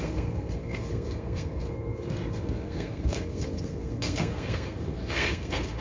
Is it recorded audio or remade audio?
remade